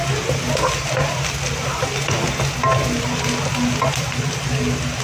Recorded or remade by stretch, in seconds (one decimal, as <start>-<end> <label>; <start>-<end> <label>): 0.0-5.0 recorded